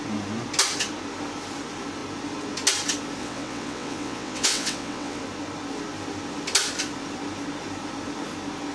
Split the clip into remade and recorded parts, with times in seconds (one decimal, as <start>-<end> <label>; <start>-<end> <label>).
0.0-3.2 recorded; 3.2-5.2 remade; 5.2-8.7 recorded